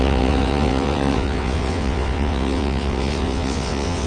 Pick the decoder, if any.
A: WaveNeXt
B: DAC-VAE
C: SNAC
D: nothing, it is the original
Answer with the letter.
A